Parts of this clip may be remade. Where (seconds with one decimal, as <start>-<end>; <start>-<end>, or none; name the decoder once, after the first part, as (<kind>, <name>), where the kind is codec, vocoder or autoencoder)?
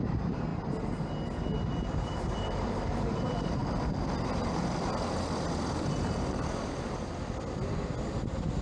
0.0-0.5 (vocoder, BigVGAN v2); 1.9-3.6